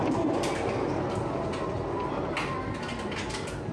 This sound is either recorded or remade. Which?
recorded